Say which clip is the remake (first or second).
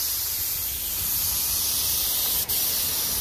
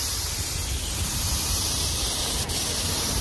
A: second